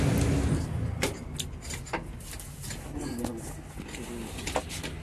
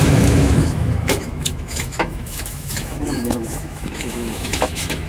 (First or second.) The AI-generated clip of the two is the second